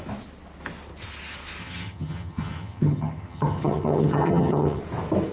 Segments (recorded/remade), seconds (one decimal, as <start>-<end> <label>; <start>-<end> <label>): 0.0-1.6 recorded; 1.6-4.8 remade; 4.8-5.3 recorded